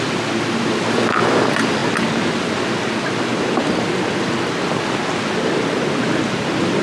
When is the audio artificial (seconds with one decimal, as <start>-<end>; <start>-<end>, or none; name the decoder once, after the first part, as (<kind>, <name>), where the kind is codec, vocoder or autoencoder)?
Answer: none